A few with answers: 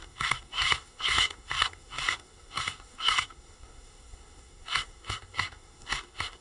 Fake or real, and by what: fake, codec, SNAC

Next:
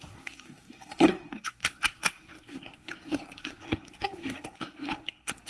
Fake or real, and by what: fake, codec, SNAC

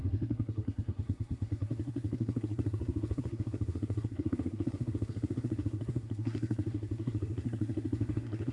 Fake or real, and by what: fake, codec, SNAC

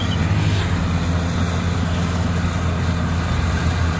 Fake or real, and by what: real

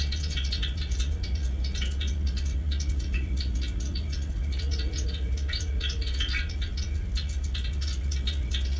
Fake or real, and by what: fake, vocoder, Vocos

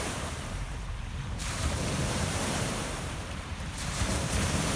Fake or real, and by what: fake, vocoder, BigVGAN v2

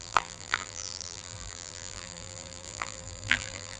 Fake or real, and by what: fake, vocoder, BigVGAN v2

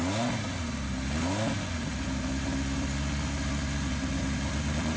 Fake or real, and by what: real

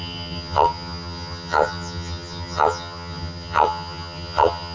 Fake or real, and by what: fake, vocoder, HiFi-GAN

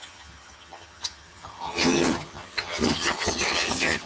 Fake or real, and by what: fake, vocoder, HiFi-GAN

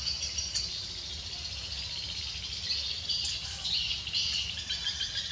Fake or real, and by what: real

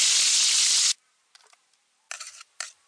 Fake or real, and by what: real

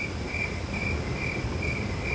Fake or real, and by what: real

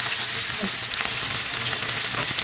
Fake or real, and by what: real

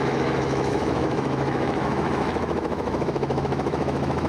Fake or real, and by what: fake, autoencoder, DAC-VAE